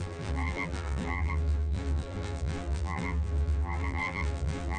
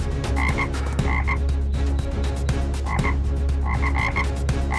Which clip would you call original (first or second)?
second